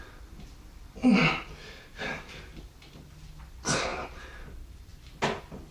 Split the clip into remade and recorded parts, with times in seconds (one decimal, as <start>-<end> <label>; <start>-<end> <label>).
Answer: 0.0-3.9 recorded; 3.9-4.5 remade; 4.5-5.7 recorded